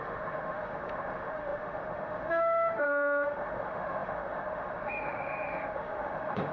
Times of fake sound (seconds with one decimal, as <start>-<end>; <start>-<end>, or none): 0.0-6.5